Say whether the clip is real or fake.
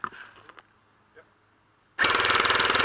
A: real